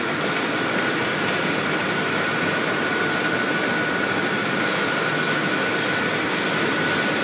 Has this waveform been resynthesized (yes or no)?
no